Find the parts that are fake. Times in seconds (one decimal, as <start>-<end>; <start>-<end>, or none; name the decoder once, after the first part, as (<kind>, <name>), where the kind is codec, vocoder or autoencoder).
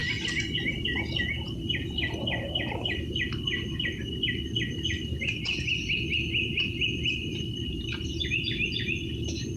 none